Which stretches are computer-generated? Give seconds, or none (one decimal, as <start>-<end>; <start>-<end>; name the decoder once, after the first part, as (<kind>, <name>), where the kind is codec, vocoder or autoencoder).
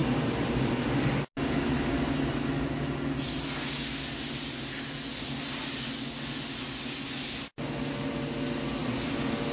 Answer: 0.0-0.7 (vocoder, BigVGAN v2); 8.8-9.5